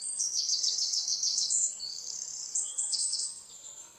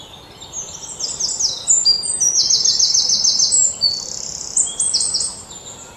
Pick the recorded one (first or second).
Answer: second